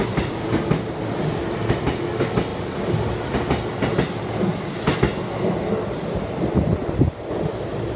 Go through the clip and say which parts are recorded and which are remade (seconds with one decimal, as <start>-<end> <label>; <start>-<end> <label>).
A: 0.0-8.0 recorded